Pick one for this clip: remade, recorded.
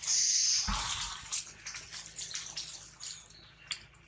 recorded